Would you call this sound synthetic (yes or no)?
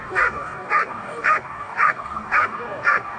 yes